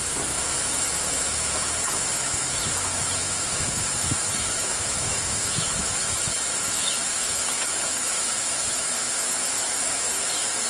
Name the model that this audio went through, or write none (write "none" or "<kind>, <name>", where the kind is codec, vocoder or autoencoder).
autoencoder, DAC-VAE